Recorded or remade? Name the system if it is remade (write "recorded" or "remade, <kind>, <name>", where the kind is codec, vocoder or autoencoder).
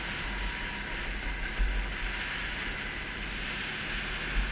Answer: recorded